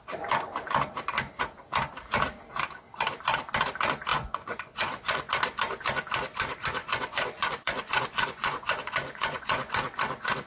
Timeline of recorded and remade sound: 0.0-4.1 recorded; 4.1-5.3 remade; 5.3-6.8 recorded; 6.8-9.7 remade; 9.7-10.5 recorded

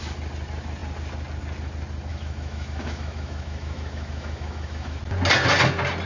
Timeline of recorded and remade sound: 0.0-2.1 recorded; 2.1-5.0 remade; 5.0-6.1 recorded

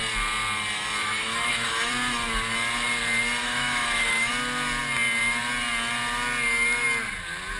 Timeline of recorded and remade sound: 0.0-1.0 recorded; 1.0-1.9 remade; 1.9-3.4 recorded; 3.4-4.3 remade; 4.3-7.6 recorded

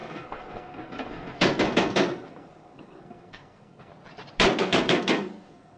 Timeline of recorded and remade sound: 0.0-3.9 remade; 3.9-4.6 recorded; 4.6-5.8 remade

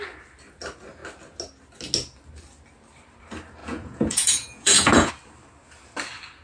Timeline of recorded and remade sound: 0.0-3.6 recorded; 3.6-5.1 remade; 5.1-6.4 recorded

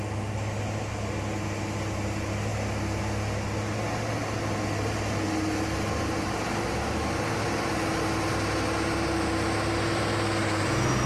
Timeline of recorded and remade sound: 0.0-11.1 recorded

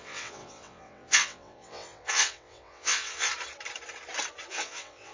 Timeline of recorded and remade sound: 0.0-3.3 remade; 3.3-4.5 recorded; 4.5-5.1 remade